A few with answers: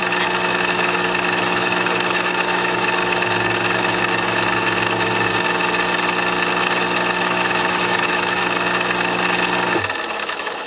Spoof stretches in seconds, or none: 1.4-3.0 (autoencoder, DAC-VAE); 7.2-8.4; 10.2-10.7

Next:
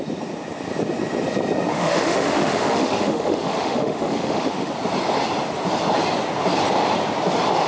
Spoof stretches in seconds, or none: 1.7-4.7 (autoencoder, DAC-VAE)

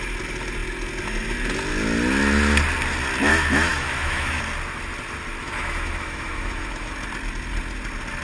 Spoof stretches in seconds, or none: 3.3-4.4 (autoencoder, DAC-VAE); 5.4-6.9